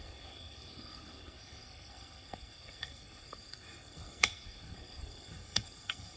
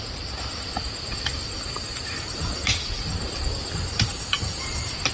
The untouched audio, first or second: second